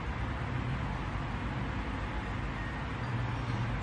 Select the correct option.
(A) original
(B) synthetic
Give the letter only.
A